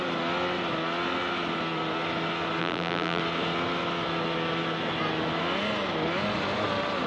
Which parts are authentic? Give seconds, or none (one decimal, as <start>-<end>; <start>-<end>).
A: 0.0-2.6; 3.2-7.1